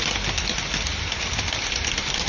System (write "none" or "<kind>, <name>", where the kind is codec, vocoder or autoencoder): none